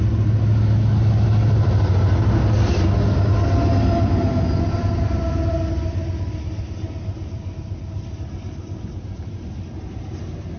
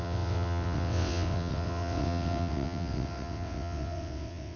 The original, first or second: first